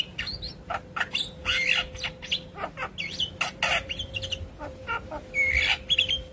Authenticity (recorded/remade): recorded